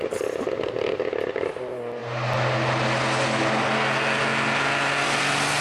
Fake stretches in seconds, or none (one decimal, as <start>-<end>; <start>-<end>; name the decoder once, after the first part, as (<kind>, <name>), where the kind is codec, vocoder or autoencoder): none